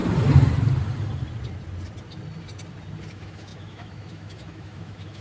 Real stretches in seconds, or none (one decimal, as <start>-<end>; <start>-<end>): 0.0-3.1